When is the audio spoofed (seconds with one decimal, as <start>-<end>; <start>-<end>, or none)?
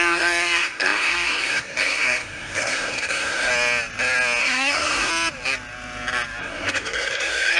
0.0-3.5; 4.4-5.1; 6.4-7.6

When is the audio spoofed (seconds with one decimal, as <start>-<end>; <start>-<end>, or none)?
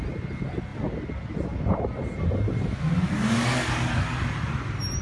none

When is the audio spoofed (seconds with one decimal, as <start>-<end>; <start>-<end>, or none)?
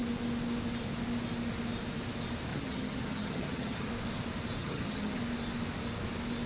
2.5-3.9; 4.6-5.2